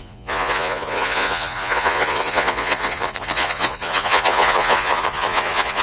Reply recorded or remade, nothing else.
remade